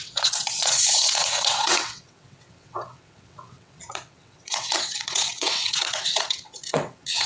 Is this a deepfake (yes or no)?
yes